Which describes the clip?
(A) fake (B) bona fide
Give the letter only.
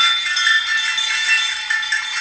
B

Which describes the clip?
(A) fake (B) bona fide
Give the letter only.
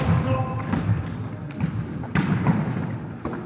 B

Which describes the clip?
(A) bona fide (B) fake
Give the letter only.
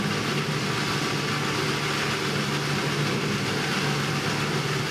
A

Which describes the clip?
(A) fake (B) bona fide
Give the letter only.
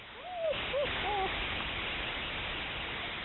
B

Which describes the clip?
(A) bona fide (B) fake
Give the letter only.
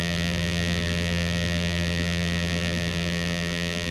B